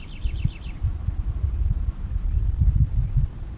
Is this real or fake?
real